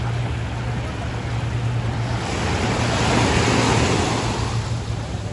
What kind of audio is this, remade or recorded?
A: recorded